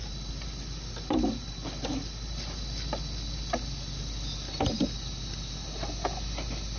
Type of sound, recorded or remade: recorded